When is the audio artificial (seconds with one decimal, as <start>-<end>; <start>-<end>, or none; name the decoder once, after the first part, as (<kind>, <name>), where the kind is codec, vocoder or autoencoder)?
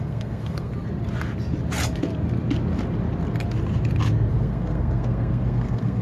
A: 0.0-0.7 (codec, SNAC); 4.3-6.0